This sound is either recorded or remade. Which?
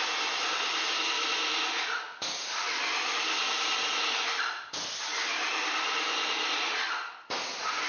recorded